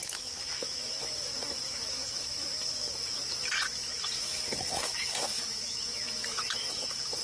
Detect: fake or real fake